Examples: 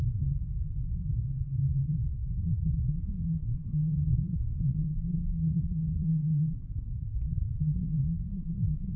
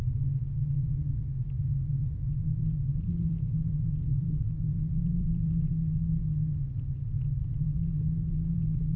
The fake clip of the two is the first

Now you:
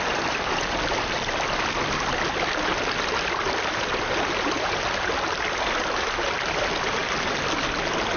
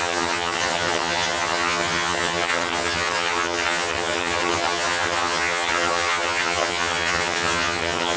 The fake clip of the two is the second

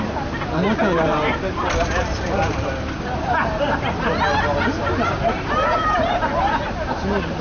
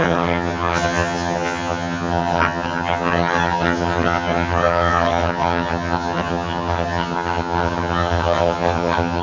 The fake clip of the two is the second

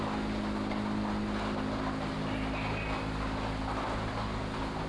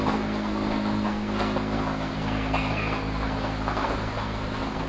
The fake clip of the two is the second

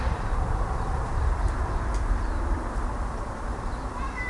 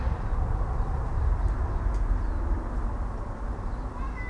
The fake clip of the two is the first